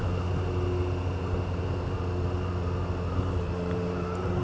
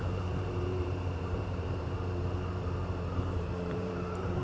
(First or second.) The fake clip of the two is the second